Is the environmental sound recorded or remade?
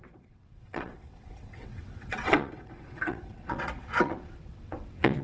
remade